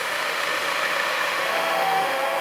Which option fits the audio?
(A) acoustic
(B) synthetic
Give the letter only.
B